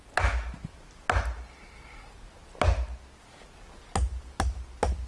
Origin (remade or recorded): recorded